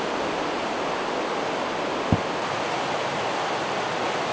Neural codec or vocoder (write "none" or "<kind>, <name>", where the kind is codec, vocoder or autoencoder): none